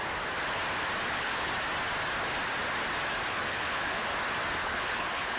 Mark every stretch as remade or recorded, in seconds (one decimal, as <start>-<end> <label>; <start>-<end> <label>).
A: 0.0-1.1 recorded; 1.1-1.5 remade; 1.5-3.3 recorded; 3.3-4.1 remade; 4.1-4.6 recorded; 4.6-5.4 remade